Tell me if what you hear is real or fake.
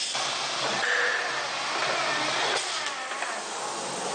real